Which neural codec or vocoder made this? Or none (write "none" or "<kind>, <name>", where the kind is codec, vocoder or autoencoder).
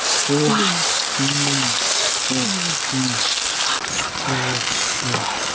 none